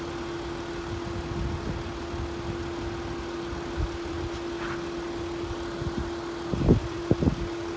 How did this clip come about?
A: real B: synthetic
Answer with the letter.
A